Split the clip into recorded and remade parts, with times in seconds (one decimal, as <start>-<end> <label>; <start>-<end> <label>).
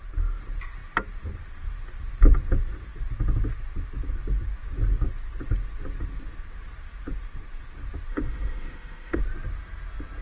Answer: 0.0-8.1 recorded; 8.1-9.2 remade; 9.2-10.2 recorded